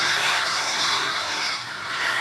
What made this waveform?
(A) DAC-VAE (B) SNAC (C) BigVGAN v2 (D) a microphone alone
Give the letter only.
B